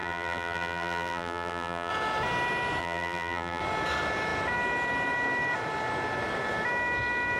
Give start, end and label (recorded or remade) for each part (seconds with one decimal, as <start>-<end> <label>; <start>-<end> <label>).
0.0-1.9 remade; 1.9-2.8 recorded; 2.8-3.6 remade; 3.6-7.4 recorded